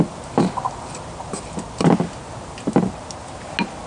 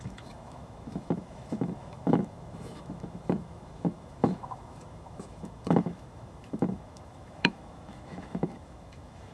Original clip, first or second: first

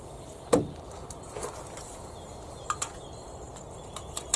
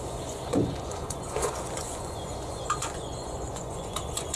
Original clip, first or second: first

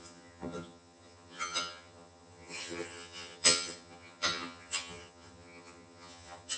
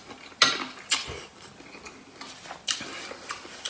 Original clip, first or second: second